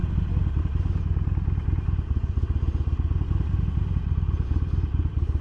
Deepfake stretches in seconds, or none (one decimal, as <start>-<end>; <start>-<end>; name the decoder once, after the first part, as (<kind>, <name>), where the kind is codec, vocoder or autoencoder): none